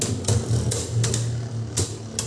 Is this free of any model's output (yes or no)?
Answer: yes